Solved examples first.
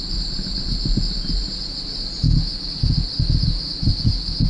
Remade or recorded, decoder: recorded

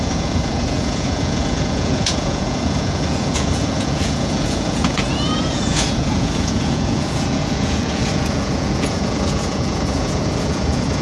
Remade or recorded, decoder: remade, vocoder, Vocos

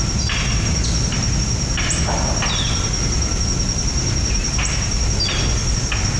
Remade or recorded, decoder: recorded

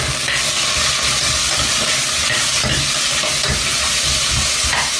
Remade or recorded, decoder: recorded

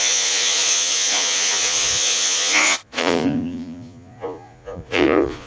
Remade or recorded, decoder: remade, vocoder, Vocos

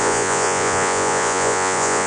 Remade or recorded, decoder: remade, vocoder, Vocos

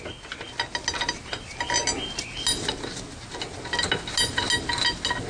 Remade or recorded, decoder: recorded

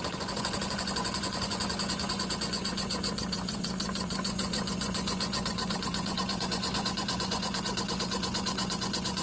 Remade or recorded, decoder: remade, vocoder, Vocos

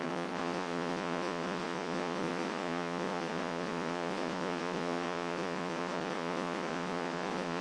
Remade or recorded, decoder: remade, vocoder, Vocos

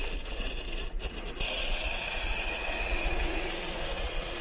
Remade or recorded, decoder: remade, vocoder, Vocos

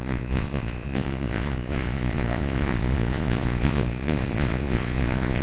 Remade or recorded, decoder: remade, vocoder, Vocos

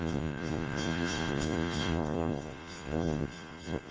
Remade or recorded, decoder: remade, vocoder, Vocos